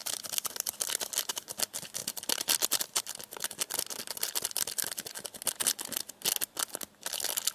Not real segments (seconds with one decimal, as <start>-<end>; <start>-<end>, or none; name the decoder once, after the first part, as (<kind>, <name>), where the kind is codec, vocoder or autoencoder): none